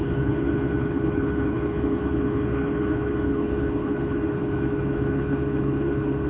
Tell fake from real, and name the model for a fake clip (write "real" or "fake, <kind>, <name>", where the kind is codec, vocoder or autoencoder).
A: fake, codec, HILCodec